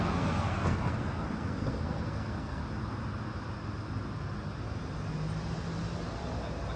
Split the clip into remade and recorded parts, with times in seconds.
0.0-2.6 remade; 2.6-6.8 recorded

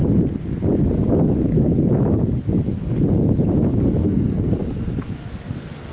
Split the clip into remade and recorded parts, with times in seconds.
0.0-4.0 recorded; 4.0-4.5 remade; 4.5-5.9 recorded

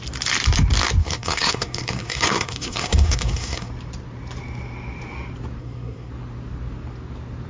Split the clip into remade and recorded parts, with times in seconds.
0.0-1.0 recorded; 1.0-3.7 remade; 3.7-5.6 recorded; 5.6-6.1 remade; 6.1-7.5 recorded

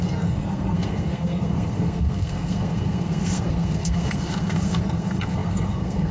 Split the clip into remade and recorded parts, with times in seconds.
0.0-6.1 remade

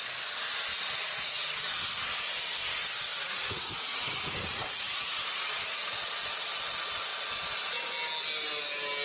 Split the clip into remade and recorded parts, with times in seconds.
0.0-0.7 recorded; 0.7-1.3 remade; 1.3-3.1 recorded; 3.1-5.8 remade; 5.8-9.0 recorded

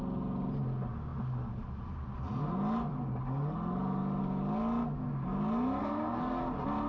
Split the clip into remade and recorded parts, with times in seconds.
0.0-5.8 recorded; 5.8-6.4 remade; 6.4-6.9 recorded

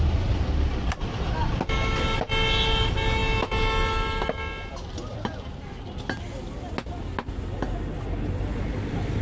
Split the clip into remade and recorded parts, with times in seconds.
0.0-9.2 recorded

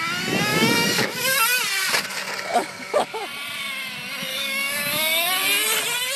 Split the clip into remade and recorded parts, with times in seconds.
0.0-0.5 recorded; 0.5-1.4 remade; 1.4-2.5 recorded; 2.5-3.2 remade; 3.2-4.3 recorded; 4.3-5.3 remade; 5.3-6.2 recorded